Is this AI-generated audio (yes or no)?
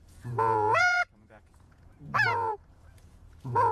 yes